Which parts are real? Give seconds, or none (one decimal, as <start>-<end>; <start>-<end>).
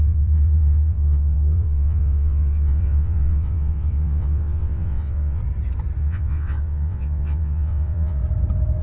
5.4-6.0; 8.2-8.8